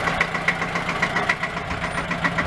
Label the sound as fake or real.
real